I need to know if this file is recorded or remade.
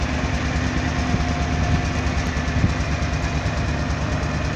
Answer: recorded